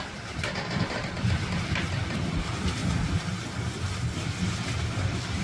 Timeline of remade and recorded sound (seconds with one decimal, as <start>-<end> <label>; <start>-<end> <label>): 0.0-2.8 remade; 2.8-4.9 recorded; 4.9-5.4 remade